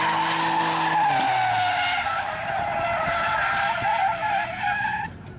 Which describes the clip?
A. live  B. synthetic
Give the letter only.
A